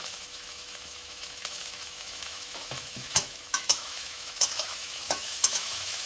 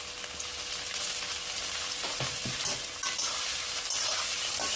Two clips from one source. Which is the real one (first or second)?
second